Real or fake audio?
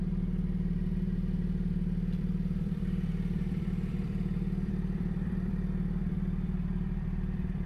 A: fake